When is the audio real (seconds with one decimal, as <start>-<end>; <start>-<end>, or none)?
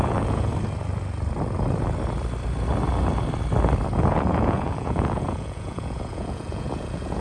0.5-4.0